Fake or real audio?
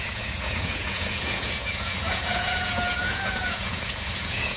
fake